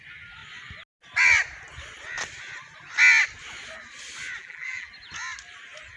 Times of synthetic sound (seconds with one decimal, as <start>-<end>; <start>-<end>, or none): 4.4-4.9